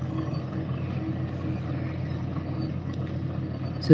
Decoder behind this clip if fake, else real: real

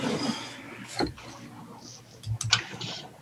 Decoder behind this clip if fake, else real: real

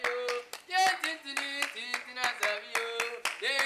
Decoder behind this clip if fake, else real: real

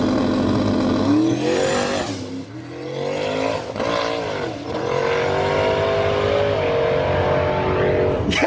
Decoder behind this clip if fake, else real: real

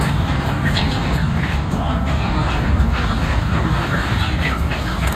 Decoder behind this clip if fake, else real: fake, codec, DAC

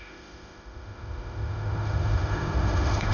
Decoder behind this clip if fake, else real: fake, autoencoder, DAC-VAE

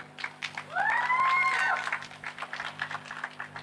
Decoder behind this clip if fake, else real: real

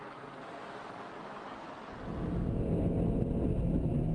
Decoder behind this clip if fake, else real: real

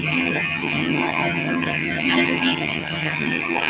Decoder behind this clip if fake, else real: fake, vocoder, HiFi-GAN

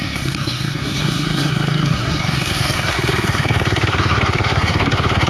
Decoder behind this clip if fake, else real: fake, codec, SNAC